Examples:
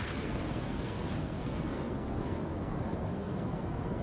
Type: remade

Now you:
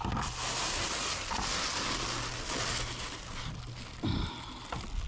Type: recorded